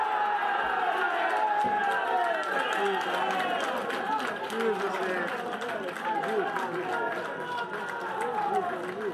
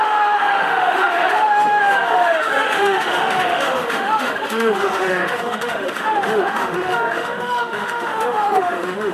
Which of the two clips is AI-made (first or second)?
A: second